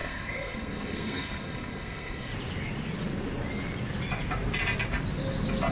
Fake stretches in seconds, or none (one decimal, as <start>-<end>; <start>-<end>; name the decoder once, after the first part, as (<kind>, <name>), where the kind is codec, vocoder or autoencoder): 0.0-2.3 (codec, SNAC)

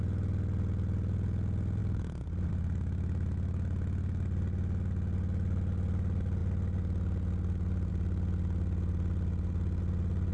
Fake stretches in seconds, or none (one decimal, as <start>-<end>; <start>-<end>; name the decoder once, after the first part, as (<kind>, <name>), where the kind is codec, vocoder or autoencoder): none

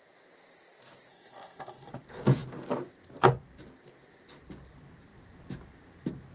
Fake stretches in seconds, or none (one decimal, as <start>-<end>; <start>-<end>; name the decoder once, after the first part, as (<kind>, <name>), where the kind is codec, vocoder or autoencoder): 1.1-1.9 (codec, SNAC)

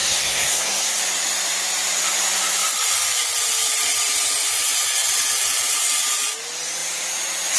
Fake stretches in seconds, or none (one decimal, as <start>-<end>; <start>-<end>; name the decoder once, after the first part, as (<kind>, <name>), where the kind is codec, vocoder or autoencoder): 0.0-1.0 (codec, SNAC)

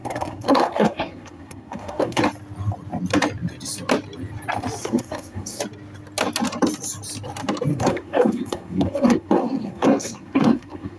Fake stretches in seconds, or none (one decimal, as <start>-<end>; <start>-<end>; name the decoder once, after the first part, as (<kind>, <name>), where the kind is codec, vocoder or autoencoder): 0.0-2.2 (codec, SNAC); 4.8-5.6; 7.7-11.0

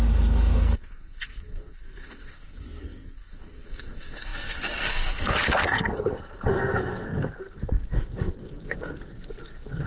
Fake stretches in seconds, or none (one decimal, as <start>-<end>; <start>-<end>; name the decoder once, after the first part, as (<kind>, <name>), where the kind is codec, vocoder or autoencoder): 0.0-9.9 (codec, SNAC)

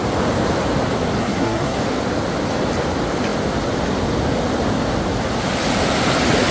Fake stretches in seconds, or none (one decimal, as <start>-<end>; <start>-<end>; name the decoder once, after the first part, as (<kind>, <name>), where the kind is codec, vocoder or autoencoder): 1.2-1.8 (codec, SNAC)